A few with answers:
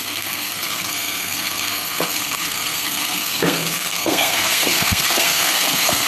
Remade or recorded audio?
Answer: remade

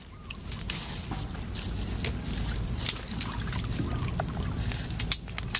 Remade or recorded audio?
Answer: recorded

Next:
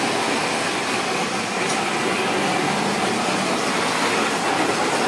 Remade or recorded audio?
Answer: recorded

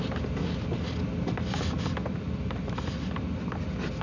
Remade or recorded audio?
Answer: recorded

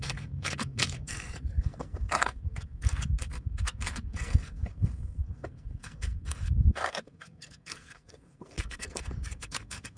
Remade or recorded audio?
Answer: remade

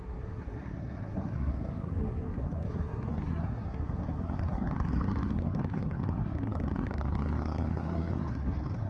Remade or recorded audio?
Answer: remade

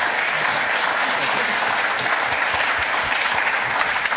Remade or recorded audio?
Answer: recorded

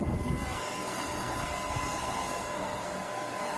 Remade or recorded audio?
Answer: remade